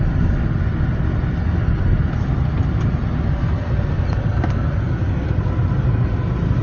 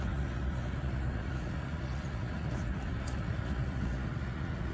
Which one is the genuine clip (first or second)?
first